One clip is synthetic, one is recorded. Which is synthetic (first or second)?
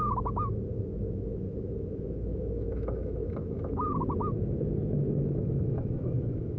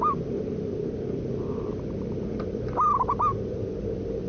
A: first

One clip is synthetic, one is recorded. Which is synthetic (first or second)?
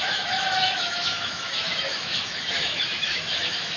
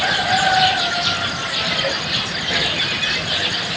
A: first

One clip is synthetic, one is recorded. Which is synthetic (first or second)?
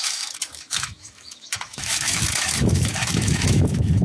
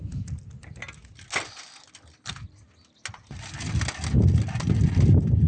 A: first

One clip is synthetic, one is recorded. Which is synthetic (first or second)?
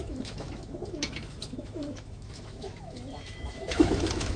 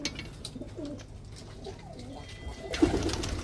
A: first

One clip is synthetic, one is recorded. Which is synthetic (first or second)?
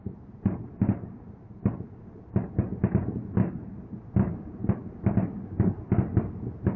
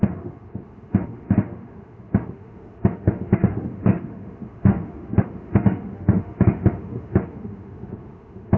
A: second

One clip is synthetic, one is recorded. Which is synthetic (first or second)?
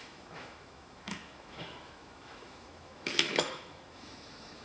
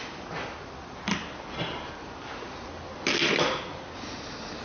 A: first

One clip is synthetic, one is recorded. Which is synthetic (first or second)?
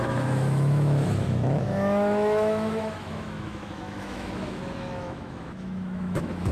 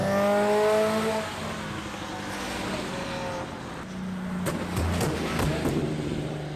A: first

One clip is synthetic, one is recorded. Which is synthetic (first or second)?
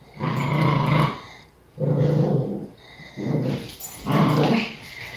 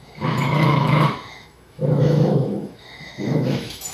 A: second